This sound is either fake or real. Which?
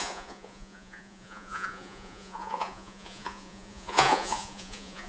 fake